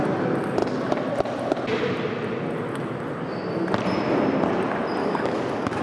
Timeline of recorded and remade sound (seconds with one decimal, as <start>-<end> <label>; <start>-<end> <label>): 0.0-5.0 recorded; 5.0-5.8 remade